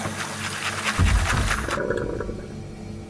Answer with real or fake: real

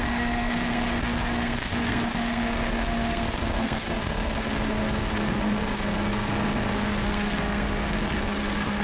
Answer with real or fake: fake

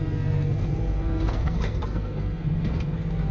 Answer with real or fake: fake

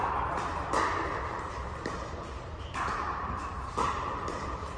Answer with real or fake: real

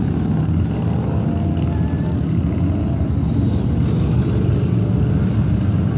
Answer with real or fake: real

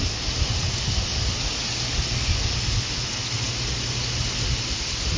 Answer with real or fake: real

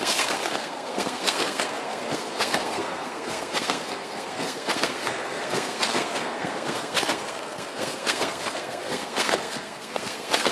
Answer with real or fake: fake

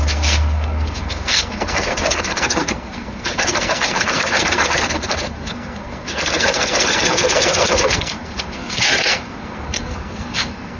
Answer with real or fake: fake